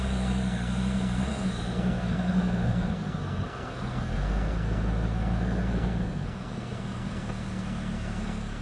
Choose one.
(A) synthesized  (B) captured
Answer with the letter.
A